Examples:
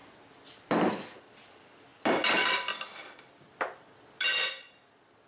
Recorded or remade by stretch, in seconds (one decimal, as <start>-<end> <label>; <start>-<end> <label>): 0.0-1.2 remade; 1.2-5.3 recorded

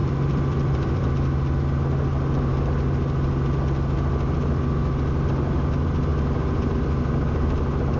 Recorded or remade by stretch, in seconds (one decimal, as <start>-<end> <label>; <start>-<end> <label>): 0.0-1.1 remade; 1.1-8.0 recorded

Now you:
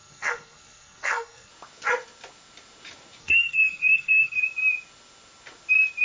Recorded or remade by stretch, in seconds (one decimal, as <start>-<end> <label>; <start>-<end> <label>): 0.0-1.5 remade; 1.5-3.2 recorded; 3.2-4.4 remade; 4.4-6.0 recorded